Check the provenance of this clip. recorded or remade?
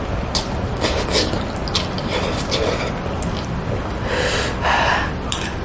remade